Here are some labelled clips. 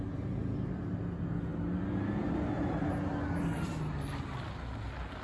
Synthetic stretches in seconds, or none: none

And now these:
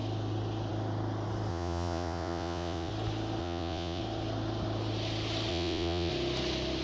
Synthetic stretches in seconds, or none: 1.5-2.9 (vocoder, Vocos); 3.4-4.0; 5.5-6.1

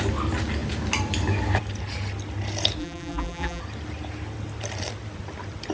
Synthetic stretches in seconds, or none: 2.8-3.6 (vocoder, BigVGAN v2)

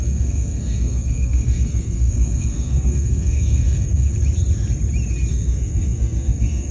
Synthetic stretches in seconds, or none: 0.0-4.1 (codec, SNAC); 5.3-6.7